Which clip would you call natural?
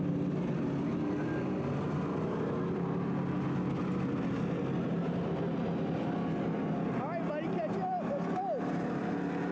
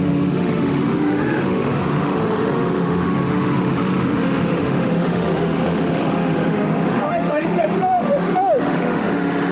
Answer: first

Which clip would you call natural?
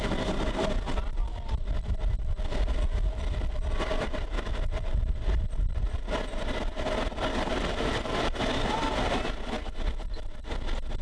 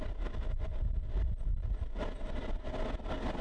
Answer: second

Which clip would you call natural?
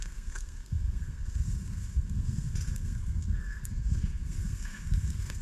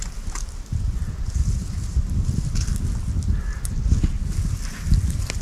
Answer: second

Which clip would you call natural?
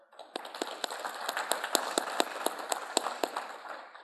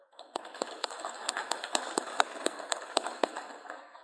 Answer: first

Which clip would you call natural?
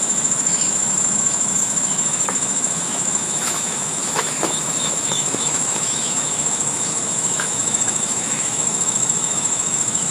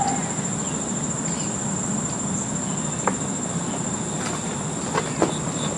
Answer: second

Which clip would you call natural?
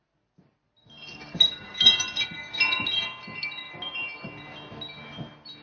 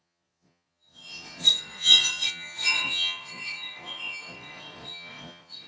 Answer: first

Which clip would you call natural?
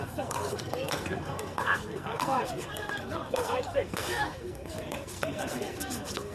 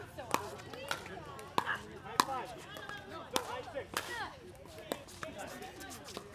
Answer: second